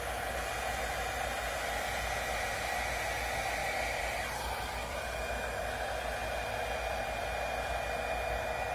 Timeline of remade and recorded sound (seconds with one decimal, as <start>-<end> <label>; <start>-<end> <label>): 0.0-3.6 recorded; 3.6-5.2 remade; 5.2-8.7 recorded